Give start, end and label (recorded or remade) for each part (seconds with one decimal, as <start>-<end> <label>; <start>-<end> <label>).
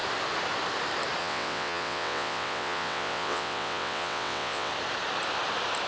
0.0-1.2 recorded; 1.2-4.7 remade; 4.7-5.9 recorded